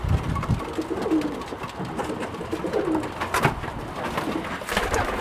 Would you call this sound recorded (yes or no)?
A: yes